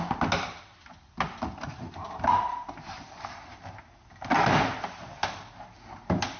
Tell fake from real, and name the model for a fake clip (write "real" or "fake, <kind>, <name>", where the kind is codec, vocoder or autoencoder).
real